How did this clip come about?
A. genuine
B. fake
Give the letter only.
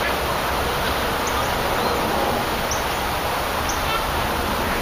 A